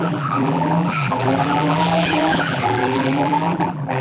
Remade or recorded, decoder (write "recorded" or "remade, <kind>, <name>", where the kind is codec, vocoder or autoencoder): remade, vocoder, BigVGAN v2